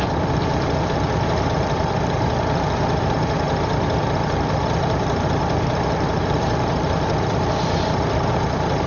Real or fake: fake